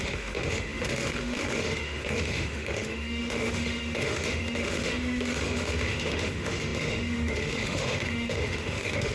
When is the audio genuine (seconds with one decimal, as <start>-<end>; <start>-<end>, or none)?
none